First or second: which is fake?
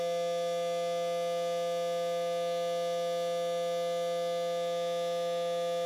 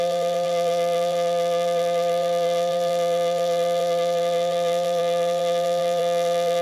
second